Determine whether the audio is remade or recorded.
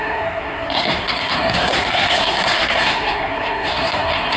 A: remade